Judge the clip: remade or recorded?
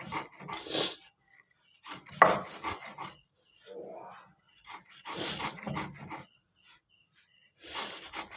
recorded